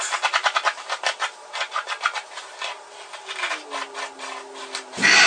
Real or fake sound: real